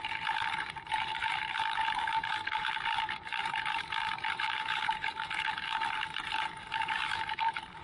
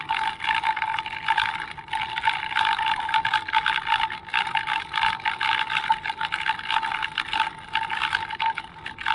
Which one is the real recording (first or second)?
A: second